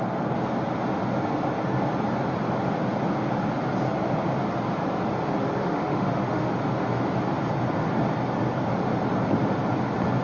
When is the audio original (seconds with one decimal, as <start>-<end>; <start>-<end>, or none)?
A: 0.0-5.6; 6.5-10.2